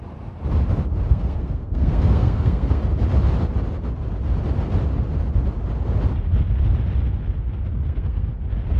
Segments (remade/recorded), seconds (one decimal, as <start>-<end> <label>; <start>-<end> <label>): 0.0-1.1 recorded; 1.1-2.8 remade; 2.8-7.7 recorded; 7.7-8.3 remade; 8.3-8.8 recorded